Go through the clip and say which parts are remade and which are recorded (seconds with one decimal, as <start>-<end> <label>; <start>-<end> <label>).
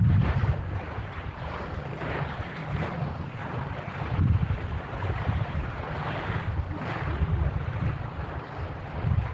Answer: 0.0-2.6 remade; 2.6-3.9 recorded; 3.9-5.6 remade; 5.6-9.3 recorded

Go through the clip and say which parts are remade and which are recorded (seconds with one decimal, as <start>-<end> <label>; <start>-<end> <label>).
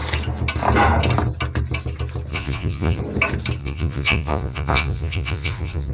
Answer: 0.0-2.3 recorded; 2.3-3.0 remade; 3.0-3.6 recorded; 3.6-5.9 remade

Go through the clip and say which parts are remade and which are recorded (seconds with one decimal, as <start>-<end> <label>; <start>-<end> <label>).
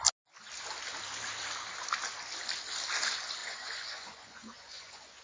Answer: 0.0-3.4 recorded; 3.4-5.2 remade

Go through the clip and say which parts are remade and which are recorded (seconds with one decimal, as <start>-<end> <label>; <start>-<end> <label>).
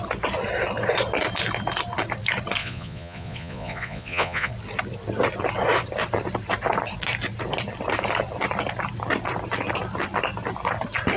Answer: 0.0-2.6 recorded; 2.6-4.5 remade; 4.5-11.2 recorded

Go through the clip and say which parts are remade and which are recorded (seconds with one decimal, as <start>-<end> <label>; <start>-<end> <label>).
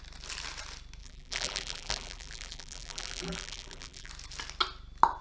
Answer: 0.0-1.0 recorded; 1.0-4.1 remade; 4.1-5.2 recorded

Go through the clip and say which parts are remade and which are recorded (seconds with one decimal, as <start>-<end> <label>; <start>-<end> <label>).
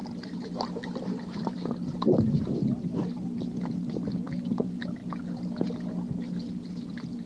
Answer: 0.0-7.3 recorded